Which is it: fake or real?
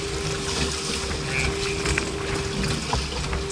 real